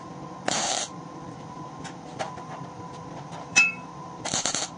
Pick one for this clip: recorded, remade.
remade